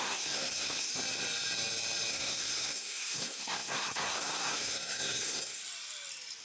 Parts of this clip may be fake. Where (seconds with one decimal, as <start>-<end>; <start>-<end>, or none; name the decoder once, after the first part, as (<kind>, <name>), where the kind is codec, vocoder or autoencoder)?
0.0-0.9 (codec, SNAC); 2.1-5.6